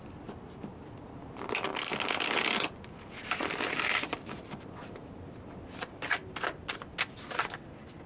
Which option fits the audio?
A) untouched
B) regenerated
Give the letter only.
A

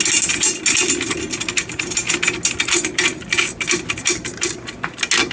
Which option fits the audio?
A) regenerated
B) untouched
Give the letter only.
B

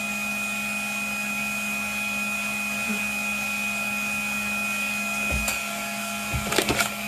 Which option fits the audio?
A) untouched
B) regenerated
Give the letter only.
B